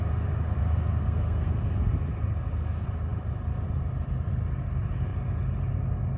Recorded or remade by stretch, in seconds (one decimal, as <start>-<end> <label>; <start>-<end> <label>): 0.0-0.6 recorded; 0.6-1.5 remade; 1.5-6.2 recorded